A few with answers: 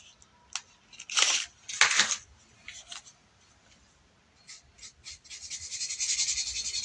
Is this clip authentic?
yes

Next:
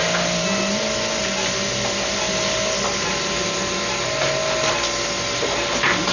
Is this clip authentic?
yes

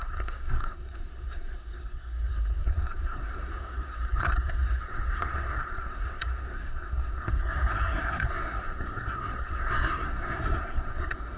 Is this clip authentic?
no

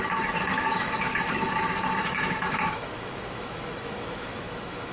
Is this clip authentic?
no